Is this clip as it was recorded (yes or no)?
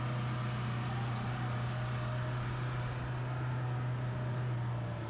yes